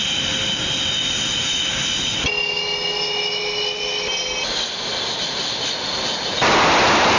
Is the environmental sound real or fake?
real